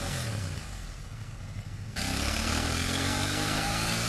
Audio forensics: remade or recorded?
remade